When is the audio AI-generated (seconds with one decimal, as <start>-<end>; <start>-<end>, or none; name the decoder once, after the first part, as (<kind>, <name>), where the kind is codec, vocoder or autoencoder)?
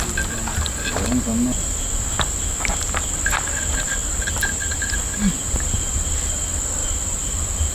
4.0-5.1 (vocoder, BigVGAN v2); 6.8-7.7